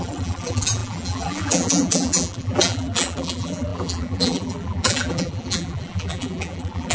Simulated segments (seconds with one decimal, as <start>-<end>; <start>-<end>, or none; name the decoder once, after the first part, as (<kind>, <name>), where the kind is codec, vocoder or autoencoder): 0.0-6.9 (vocoder, BigVGAN v2)